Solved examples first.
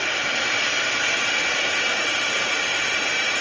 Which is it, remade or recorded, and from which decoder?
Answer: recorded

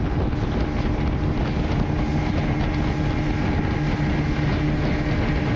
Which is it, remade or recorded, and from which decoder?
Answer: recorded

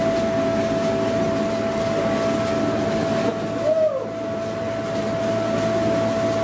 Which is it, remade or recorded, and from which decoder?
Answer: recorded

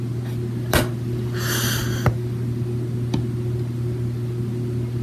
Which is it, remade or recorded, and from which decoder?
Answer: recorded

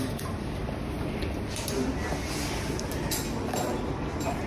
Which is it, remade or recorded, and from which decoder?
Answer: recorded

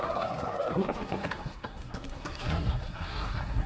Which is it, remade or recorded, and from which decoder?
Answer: remade, codec, SNAC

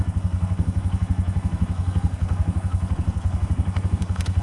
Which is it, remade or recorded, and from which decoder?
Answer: remade, codec, SNAC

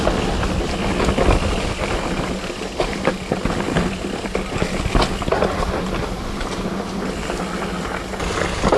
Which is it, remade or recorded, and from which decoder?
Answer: recorded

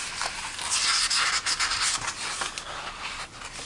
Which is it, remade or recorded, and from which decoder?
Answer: recorded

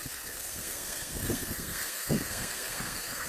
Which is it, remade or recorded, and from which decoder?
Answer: remade, codec, SNAC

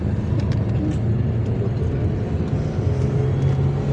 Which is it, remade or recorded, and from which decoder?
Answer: recorded